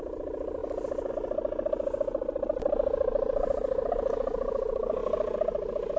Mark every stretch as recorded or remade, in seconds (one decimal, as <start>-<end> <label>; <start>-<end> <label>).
0.0-0.6 recorded; 0.6-1.1 remade; 1.1-6.0 recorded